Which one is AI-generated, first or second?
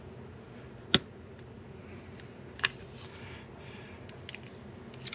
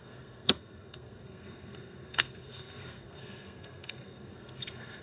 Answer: second